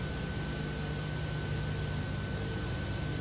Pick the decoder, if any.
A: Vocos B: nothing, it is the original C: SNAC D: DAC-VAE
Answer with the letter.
B